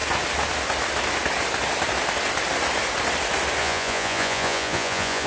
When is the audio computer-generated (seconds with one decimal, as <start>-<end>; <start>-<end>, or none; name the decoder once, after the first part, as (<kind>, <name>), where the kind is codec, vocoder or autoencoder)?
3.6-5.3 (vocoder, Vocos)